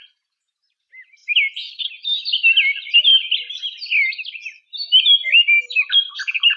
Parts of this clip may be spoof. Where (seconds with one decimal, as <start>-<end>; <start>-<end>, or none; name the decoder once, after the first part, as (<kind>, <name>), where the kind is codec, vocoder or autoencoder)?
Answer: 5.5-6.1 (vocoder, BigVGAN v2)